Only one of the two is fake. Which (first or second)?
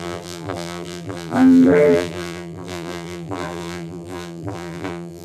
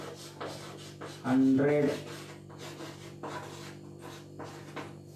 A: first